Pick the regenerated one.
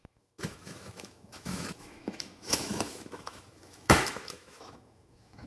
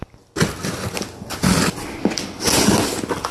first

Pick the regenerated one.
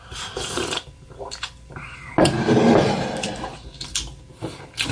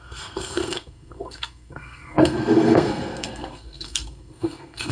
second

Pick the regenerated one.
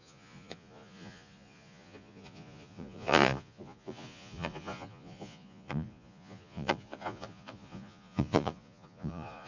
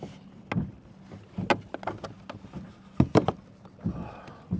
first